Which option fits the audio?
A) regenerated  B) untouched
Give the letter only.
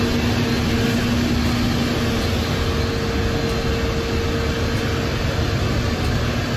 B